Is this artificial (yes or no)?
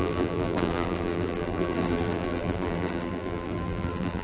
yes